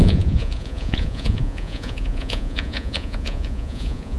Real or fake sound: fake